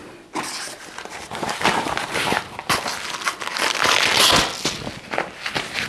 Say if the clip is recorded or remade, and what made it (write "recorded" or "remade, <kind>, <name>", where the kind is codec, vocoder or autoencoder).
recorded